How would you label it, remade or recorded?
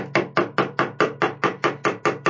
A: recorded